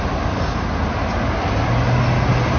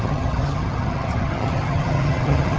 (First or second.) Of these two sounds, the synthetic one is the second